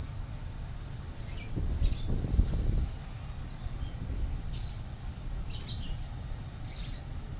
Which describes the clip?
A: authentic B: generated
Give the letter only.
A